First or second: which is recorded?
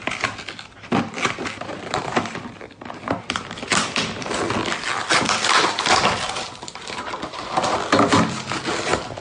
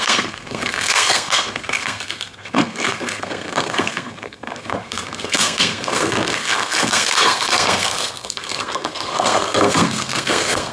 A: first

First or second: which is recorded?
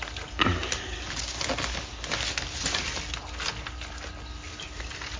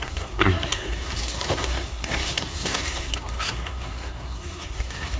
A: first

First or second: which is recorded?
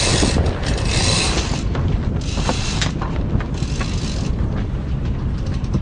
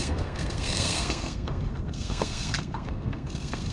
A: first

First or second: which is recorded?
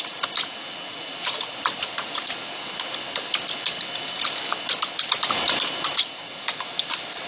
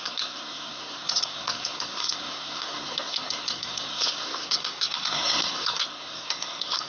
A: first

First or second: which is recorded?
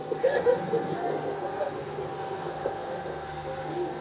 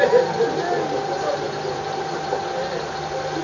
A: second